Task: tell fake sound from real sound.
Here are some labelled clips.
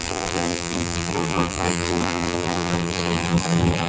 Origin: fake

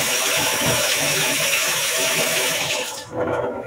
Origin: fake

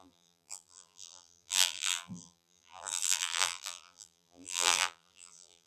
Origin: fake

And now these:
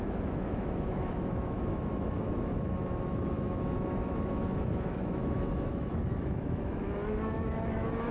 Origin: fake